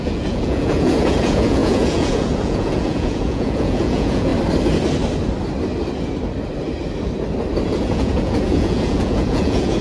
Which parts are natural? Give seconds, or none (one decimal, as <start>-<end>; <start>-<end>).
4.3-7.7